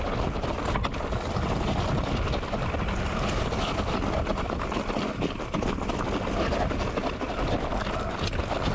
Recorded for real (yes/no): yes